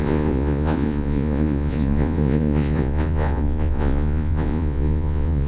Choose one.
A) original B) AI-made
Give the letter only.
B